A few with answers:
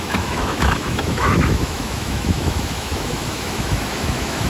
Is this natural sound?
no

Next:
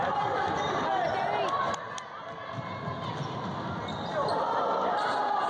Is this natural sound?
yes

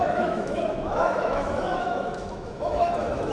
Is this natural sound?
no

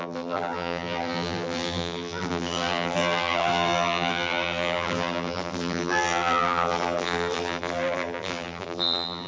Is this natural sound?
no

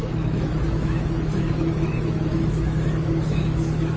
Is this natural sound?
no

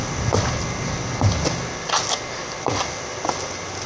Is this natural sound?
yes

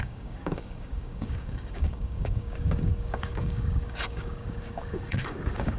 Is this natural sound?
no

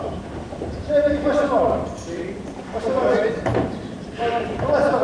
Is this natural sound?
no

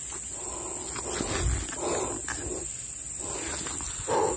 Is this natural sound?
yes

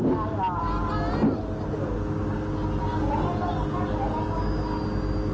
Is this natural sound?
yes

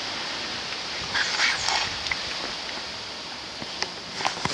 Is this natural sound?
yes